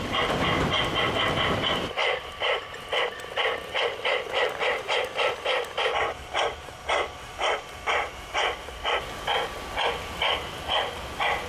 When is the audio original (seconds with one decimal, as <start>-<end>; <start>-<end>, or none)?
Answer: 0.0-2.0; 3.0-11.5